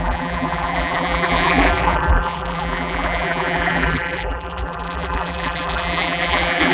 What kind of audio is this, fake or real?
fake